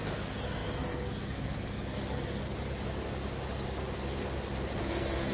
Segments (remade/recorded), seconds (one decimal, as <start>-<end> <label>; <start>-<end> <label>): 0.0-2.4 remade; 2.4-4.8 recorded; 4.8-5.3 remade